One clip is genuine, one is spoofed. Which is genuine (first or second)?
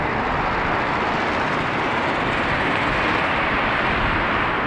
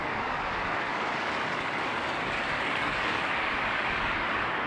first